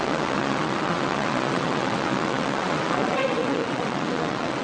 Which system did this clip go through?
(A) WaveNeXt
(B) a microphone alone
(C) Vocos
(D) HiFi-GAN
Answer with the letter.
A